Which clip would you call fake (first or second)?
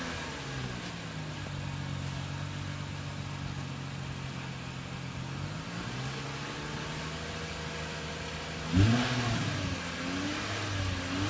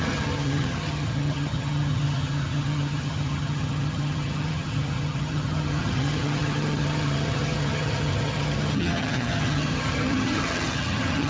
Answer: second